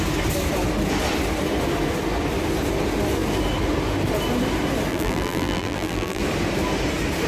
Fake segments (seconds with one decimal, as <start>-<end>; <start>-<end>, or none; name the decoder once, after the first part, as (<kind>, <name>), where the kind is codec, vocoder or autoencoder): 4.9-6.2 (vocoder, BigVGAN v2)